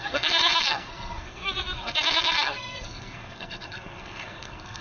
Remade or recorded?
remade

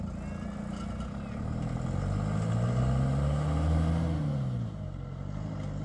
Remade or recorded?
recorded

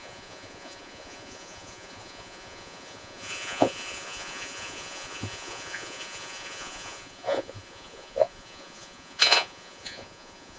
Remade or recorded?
remade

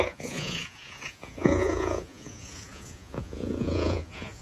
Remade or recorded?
remade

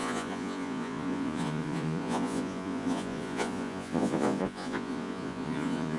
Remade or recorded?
remade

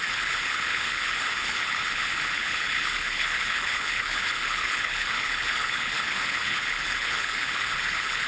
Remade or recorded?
remade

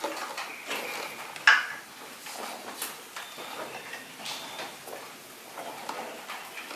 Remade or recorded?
recorded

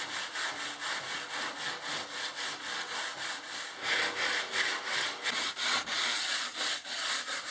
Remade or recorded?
recorded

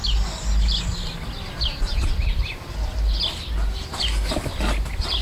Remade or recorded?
recorded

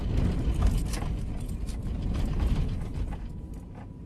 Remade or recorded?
recorded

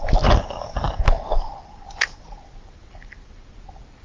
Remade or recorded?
recorded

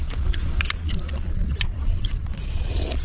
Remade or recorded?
remade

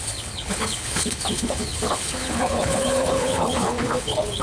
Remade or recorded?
remade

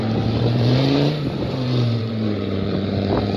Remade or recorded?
remade